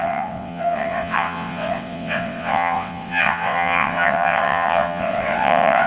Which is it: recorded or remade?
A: remade